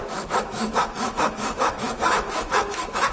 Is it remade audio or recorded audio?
remade